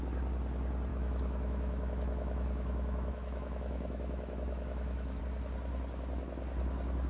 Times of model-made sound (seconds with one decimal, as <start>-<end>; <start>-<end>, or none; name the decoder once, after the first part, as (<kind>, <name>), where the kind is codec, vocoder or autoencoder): 0.9-5.2 (autoencoder, DAC-VAE)